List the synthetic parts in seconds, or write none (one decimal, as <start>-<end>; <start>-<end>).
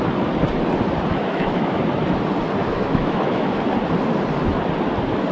1.1-1.8; 2.6-3.6